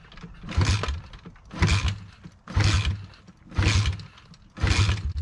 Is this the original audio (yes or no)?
yes